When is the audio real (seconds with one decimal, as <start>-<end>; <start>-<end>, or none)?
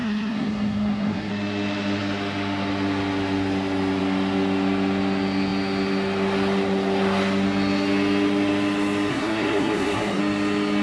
1.3-9.1; 10.2-10.8